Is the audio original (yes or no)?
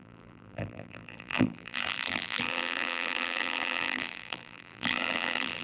no